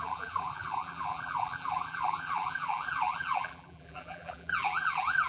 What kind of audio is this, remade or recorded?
remade